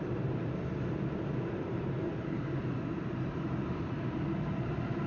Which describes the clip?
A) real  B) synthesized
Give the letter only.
B